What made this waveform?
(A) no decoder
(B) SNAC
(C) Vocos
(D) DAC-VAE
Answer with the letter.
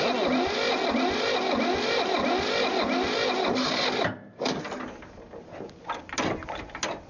A